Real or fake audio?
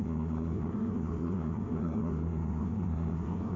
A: fake